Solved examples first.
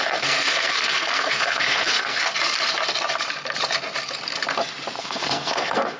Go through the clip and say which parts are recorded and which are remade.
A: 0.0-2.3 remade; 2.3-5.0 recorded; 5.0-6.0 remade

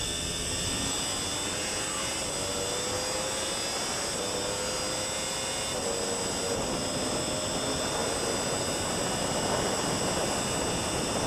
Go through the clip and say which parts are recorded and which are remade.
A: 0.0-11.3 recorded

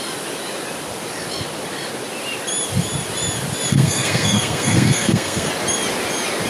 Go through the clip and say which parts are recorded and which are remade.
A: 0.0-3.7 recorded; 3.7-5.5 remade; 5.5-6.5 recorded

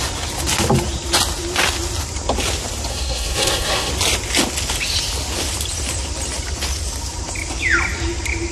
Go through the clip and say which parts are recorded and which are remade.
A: 0.0-2.9 recorded; 2.9-3.9 remade; 3.9-8.5 recorded